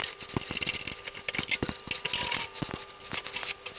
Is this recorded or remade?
recorded